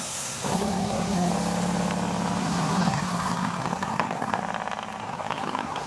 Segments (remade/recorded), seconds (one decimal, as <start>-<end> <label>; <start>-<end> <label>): 0.0-1.3 remade; 1.3-2.4 recorded; 2.4-4.4 remade; 4.4-5.0 recorded; 5.0-5.9 remade